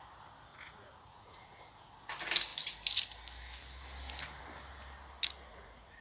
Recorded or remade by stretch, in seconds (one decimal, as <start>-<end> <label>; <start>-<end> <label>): 0.0-0.5 recorded; 0.5-1.6 remade; 1.6-5.5 recorded; 5.5-6.0 remade